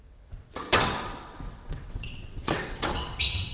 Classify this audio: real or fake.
fake